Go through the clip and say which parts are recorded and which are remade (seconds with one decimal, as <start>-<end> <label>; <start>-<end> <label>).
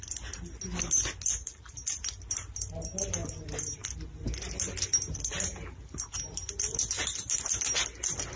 0.0-8.4 recorded